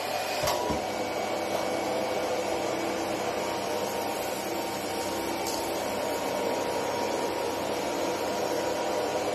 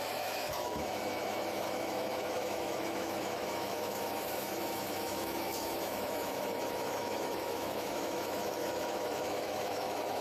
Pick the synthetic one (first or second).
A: second